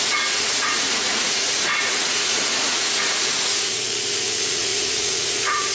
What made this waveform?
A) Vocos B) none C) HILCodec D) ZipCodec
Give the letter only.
A